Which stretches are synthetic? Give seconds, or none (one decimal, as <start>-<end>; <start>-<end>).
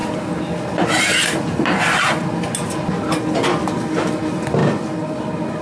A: none